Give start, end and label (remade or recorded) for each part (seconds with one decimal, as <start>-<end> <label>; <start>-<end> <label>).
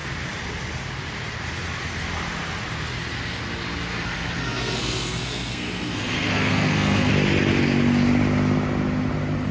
0.0-3.9 recorded; 3.9-7.1 remade; 7.1-9.5 recorded